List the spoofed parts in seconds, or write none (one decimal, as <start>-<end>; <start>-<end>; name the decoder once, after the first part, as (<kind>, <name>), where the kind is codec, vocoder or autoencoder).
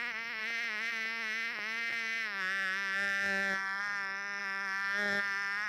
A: 0.4-3.8 (autoencoder, DAC-VAE); 4.4-5.2